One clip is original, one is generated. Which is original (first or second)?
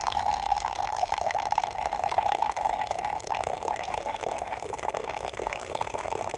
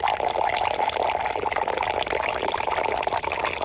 second